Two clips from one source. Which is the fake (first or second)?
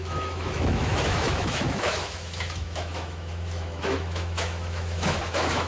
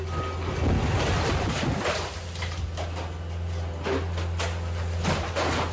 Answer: first